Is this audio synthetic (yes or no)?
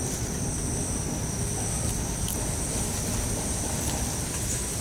no